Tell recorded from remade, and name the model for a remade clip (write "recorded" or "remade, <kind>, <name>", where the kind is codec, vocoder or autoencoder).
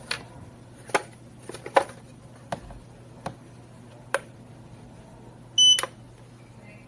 recorded